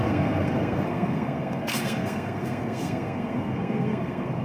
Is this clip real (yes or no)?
no